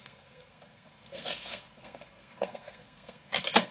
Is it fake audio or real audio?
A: fake